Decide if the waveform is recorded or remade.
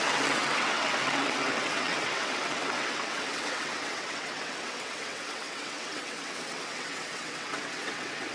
remade